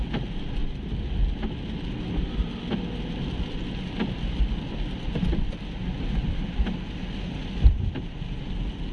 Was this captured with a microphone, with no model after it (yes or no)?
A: yes